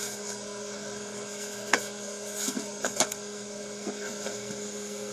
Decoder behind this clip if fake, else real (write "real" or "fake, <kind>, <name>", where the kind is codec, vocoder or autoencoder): fake, codec, SNAC